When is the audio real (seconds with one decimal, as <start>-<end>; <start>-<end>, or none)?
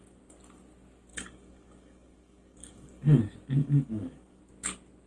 0.0-1.1; 3.2-3.6; 4.4-5.1